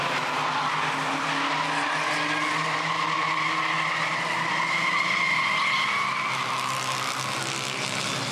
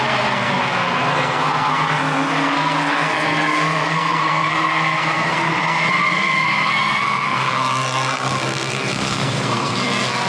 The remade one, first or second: second